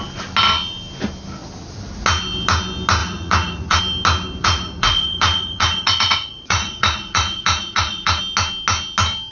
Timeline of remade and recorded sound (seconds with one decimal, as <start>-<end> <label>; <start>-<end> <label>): 0.0-3.0 recorded; 3.0-3.8 remade; 3.8-4.4 recorded; 4.4-8.2 remade; 8.2-9.3 recorded

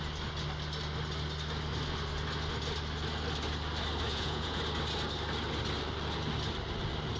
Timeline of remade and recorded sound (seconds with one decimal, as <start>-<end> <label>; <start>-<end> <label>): 0.0-4.1 recorded; 4.1-4.6 remade; 4.6-7.2 recorded

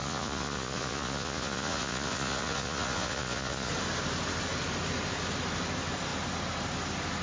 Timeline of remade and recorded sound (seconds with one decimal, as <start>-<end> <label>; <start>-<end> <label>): 0.0-3.7 remade; 3.7-7.2 recorded

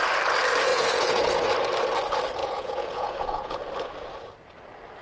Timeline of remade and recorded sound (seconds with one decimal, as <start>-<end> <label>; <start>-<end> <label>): 0.0-0.7 recorded; 0.7-1.5 remade; 1.5-2.4 recorded; 2.4-3.6 remade; 3.6-5.0 recorded

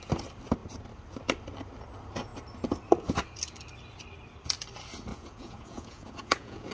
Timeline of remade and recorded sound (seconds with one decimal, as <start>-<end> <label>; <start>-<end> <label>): 0.0-5.1 recorded; 5.1-6.7 remade

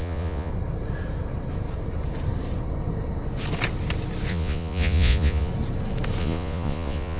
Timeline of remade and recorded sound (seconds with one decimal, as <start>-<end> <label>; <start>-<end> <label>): 0.0-0.5 remade; 0.5-4.3 recorded; 4.3-5.5 remade; 5.5-6.2 recorded; 6.2-7.2 remade

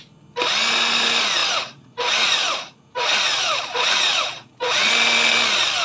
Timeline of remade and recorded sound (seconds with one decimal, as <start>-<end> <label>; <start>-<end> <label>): 0.0-1.4 recorded; 1.4-4.9 remade; 4.9-5.8 recorded